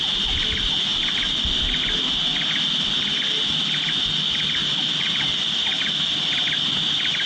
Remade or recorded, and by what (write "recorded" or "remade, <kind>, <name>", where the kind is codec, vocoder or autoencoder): recorded